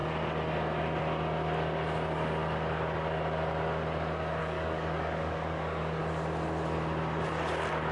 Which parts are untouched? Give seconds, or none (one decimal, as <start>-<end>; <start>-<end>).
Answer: 0.0-4.4; 6.0-7.9